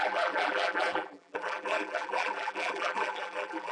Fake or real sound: fake